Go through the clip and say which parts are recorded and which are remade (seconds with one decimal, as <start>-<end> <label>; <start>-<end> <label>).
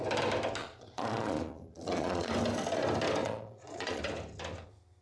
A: 0.0-0.6 recorded; 0.6-2.3 remade; 2.3-3.2 recorded; 3.2-4.0 remade; 4.0-5.0 recorded